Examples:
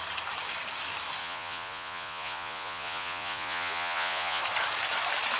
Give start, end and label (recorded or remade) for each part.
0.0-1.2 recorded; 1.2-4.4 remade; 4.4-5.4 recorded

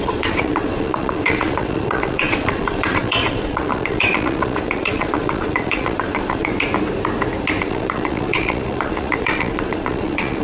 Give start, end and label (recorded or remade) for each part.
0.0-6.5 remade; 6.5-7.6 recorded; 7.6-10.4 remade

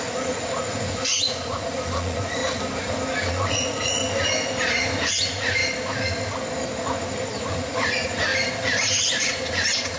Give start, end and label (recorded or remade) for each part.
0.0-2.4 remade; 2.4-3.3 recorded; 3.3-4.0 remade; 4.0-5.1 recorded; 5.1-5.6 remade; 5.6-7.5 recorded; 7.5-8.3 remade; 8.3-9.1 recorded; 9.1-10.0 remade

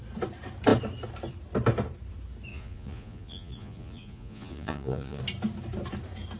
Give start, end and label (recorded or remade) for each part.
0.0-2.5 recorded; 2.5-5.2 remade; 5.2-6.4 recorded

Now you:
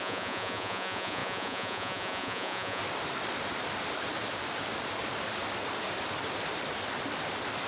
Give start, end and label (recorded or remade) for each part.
0.0-2.8 remade; 2.8-7.7 recorded

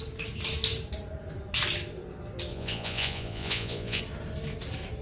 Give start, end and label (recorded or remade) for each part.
0.0-2.5 recorded; 2.5-4.0 remade; 4.0-5.0 recorded

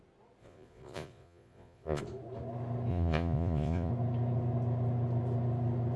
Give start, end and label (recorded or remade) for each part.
0.0-0.4 recorded; 0.4-2.0 remade; 2.0-2.9 recorded; 2.9-3.9 remade; 3.9-6.0 recorded